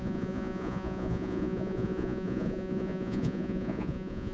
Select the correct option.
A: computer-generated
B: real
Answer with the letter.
A